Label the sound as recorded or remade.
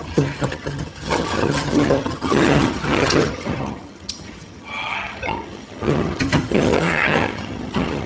remade